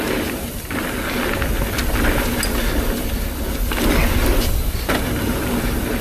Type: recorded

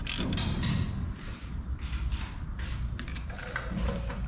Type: recorded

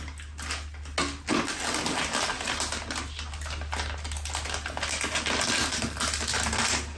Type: recorded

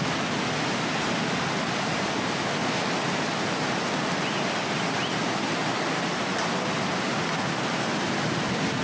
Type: recorded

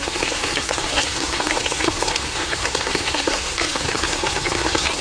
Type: remade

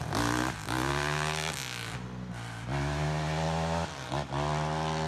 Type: recorded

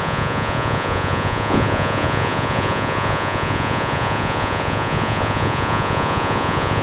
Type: remade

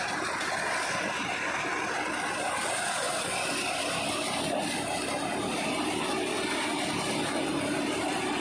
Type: recorded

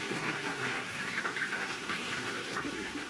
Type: remade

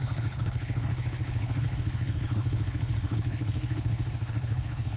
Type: remade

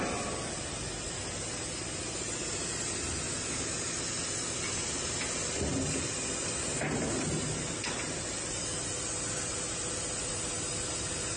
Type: recorded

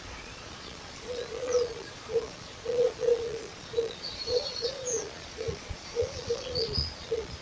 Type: remade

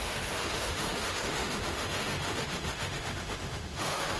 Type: remade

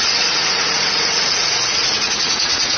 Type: remade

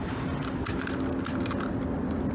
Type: recorded